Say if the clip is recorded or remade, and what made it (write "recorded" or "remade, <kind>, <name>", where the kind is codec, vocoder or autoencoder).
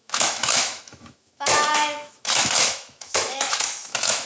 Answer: remade, autoencoder, DAC-VAE